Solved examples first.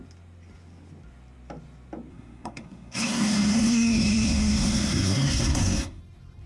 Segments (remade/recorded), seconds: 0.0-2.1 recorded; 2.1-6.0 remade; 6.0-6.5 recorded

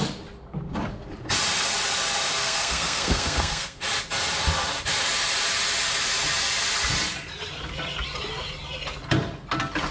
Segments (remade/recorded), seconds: 0.0-2.4 recorded; 2.4-3.8 remade; 3.8-9.9 recorded

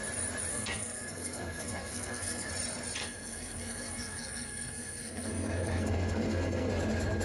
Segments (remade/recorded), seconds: 0.0-0.5 recorded; 0.5-2.5 remade; 2.5-3.0 recorded; 3.0-6.7 remade; 6.7-7.2 recorded

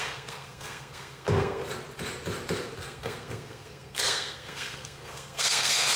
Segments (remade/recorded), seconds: 0.0-1.6 remade; 1.6-2.8 recorded; 2.8-6.0 remade

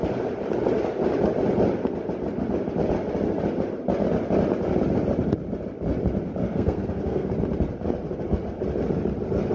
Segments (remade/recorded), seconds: 0.0-6.4 recorded; 6.4-7.3 remade; 7.3-9.5 recorded

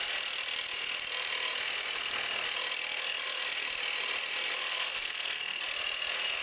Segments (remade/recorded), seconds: 0.0-4.7 recorded; 4.7-5.6 remade; 5.6-6.4 recorded

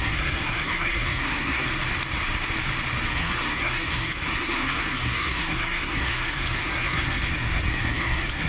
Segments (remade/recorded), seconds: 0.0-1.7 remade; 1.7-3.1 recorded; 3.1-8.5 remade